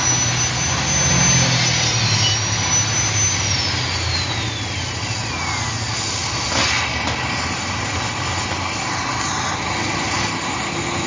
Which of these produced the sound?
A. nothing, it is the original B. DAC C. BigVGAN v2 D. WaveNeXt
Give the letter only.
A